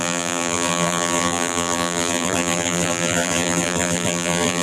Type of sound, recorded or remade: remade